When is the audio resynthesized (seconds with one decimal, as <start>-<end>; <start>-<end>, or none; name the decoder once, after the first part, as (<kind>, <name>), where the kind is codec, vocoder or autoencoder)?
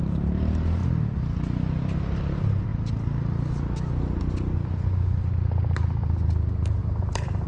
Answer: 6.8-7.5 (vocoder, BigVGAN v2)